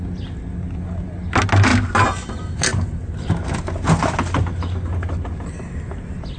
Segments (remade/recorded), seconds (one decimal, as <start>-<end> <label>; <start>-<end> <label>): 0.0-6.4 recorded